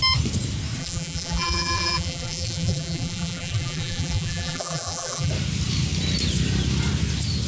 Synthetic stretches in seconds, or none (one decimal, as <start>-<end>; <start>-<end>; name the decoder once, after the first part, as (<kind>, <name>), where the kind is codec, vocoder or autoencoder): 0.8-5.3 (vocoder, BigVGAN v2)